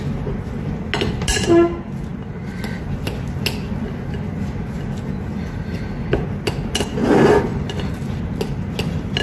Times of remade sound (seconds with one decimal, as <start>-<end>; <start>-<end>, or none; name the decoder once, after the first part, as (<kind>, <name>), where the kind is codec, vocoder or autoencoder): none